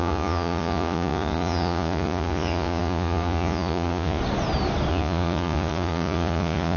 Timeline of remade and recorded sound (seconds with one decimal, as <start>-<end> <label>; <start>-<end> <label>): 0.0-4.2 remade; 4.2-4.9 recorded; 4.9-6.8 remade